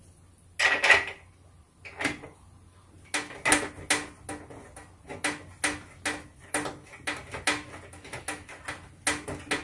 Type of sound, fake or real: real